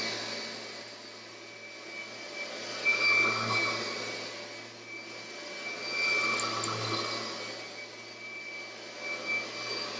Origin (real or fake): real